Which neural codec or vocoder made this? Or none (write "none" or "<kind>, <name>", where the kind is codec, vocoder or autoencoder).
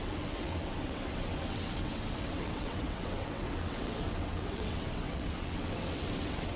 vocoder, WaveNeXt